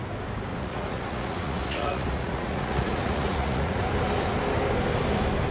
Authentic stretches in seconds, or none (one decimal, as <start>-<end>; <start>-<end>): 0.0-0.5; 3.8-5.5